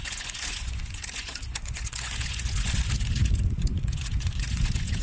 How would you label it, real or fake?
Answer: fake